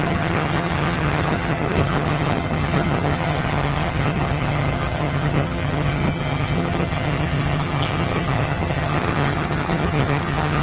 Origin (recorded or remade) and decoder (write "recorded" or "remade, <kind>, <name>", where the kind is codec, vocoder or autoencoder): remade, vocoder, HiFi-GAN